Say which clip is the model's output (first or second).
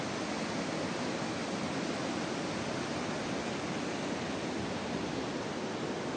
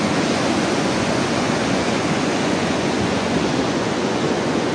second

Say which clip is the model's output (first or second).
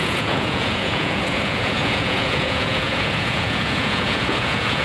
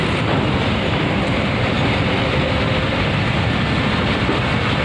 first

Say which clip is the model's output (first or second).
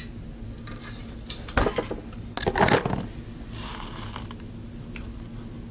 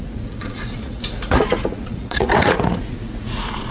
second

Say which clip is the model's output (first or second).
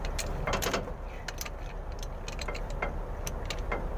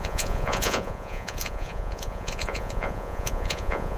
second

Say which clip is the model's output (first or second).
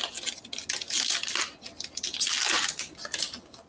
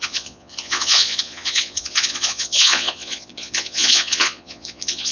second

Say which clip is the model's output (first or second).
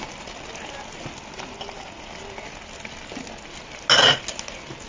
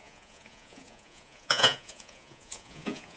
second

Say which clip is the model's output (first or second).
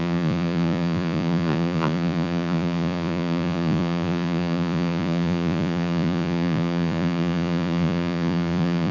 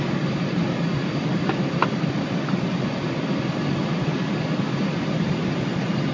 first